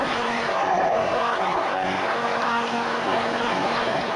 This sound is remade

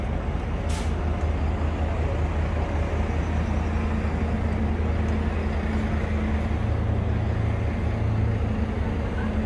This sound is recorded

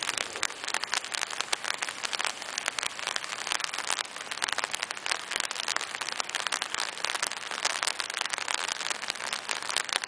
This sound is recorded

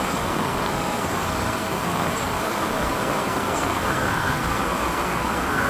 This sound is remade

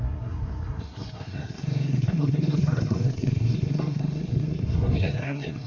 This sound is remade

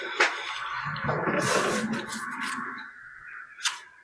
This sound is recorded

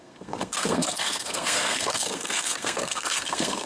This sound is remade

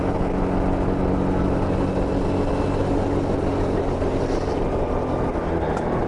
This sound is recorded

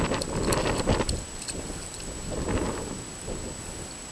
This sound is recorded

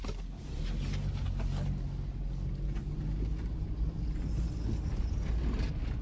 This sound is recorded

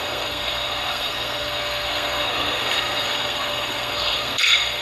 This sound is remade